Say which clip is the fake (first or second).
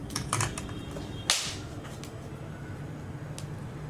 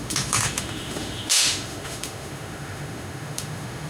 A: second